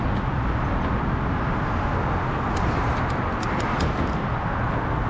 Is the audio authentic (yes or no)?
yes